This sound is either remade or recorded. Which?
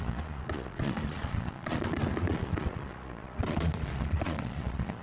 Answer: remade